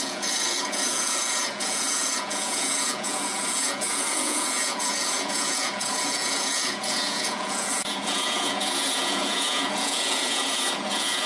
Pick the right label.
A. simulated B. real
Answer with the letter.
A